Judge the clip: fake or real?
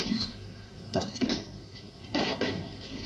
fake